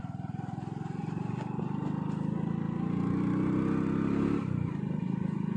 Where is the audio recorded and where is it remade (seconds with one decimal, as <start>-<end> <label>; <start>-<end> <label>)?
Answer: 0.0-5.6 recorded